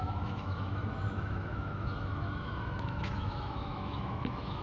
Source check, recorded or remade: remade